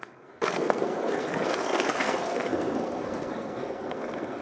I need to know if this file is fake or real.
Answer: fake